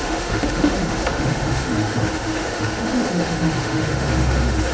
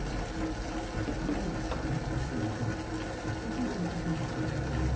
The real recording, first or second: second